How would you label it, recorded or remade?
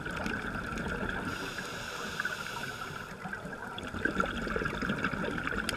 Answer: recorded